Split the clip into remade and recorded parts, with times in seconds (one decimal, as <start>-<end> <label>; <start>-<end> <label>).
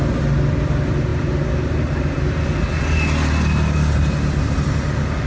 0.0-5.3 recorded